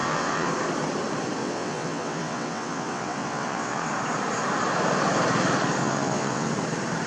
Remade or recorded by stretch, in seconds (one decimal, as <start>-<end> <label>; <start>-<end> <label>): 0.0-0.5 remade; 0.5-1.4 recorded; 1.4-3.9 remade; 3.9-5.8 recorded; 5.8-6.5 remade; 6.5-7.1 recorded